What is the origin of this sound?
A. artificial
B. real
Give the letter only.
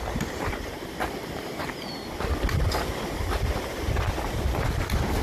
B